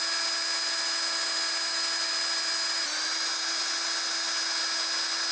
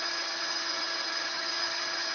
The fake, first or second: second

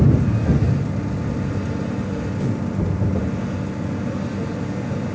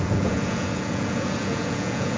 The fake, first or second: second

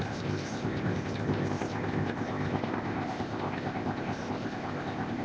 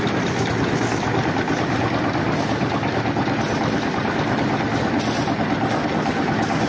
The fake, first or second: first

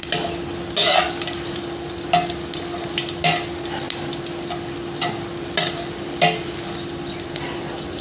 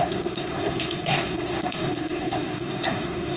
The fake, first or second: second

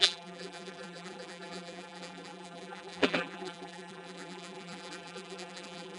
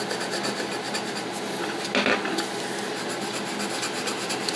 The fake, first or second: first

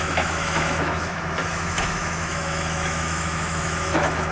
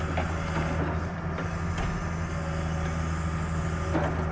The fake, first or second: first